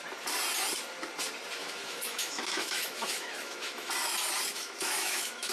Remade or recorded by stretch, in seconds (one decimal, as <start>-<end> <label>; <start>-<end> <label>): 0.0-1.6 recorded; 1.6-3.9 remade; 3.9-4.5 recorded; 4.5-5.5 remade

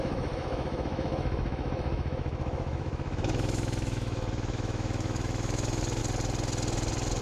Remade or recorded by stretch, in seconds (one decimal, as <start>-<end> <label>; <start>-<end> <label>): 0.0-6.0 remade; 6.0-7.2 recorded

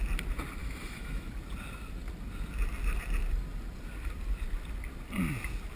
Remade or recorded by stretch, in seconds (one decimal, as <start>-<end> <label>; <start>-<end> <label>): 0.0-0.6 recorded; 0.6-1.3 remade; 1.3-5.8 recorded

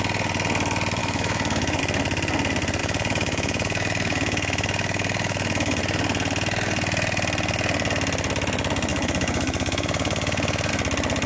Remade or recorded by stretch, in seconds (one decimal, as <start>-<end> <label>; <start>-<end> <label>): 0.0-1.0 recorded; 1.0-1.8 remade; 1.8-2.8 recorded; 2.8-5.8 remade; 5.8-8.9 recorded; 8.9-10.7 remade; 10.7-11.3 recorded

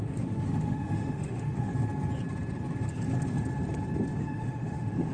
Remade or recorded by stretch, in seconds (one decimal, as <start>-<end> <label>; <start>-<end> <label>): 0.0-1.7 remade; 1.7-4.2 recorded; 4.2-5.1 remade

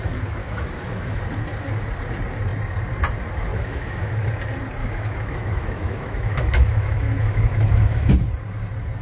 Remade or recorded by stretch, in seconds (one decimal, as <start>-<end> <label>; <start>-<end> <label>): 0.0-0.4 recorded; 0.4-1.2 remade; 1.2-3.5 recorded; 3.5-4.3 remade; 4.3-4.8 recorded; 4.8-8.1 remade; 8.1-9.0 recorded

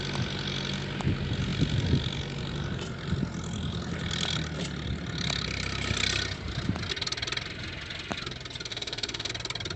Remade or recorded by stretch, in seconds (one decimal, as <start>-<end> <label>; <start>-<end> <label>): 0.0-8.7 recorded; 8.7-9.3 remade; 9.3-9.8 recorded